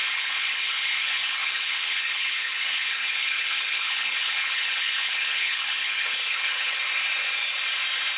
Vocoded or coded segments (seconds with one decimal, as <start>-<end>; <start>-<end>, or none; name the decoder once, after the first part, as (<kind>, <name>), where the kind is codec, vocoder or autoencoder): 0.0-6.8 (codec, HILCodec)